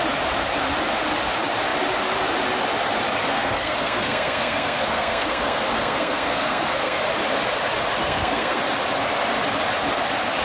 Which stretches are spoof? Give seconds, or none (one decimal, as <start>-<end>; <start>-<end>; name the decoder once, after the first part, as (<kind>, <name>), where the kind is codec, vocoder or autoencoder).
3.2-7.0 (codec, SNAC); 8.0-8.6